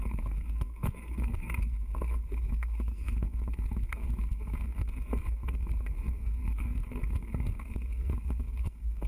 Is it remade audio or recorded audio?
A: remade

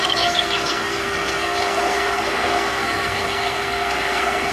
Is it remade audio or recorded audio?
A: remade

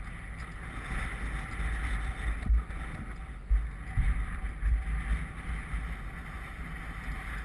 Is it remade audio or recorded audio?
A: recorded